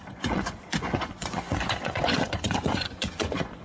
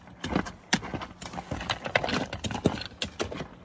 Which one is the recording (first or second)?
second